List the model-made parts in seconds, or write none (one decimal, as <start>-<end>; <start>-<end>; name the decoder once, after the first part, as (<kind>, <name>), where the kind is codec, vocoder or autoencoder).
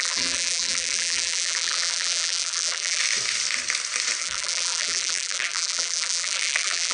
0.0-3.0 (vocoder, BigVGAN v2); 4.2-6.9